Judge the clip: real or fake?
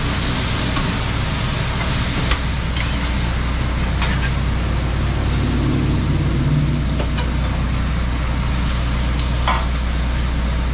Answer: real